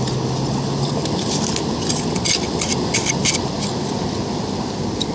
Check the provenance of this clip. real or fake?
real